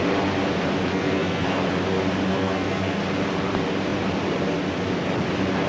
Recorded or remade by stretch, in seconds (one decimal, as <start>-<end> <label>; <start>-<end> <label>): 0.0-0.9 recorded; 0.9-1.6 remade; 1.6-2.3 recorded; 2.3-3.0 remade; 3.0-5.7 recorded